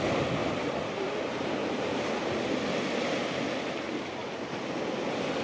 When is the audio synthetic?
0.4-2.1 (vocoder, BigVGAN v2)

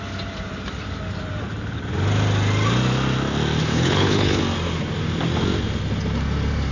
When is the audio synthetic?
3.6-4.4 (codec, HILCodec)